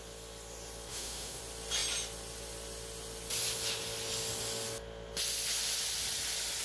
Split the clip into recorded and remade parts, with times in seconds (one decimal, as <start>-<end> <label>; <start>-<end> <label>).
0.0-0.9 recorded; 0.9-1.4 remade; 1.4-6.6 recorded